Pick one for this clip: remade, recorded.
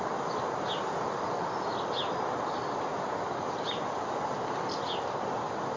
recorded